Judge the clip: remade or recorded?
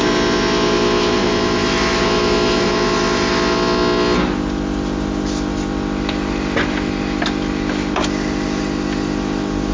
recorded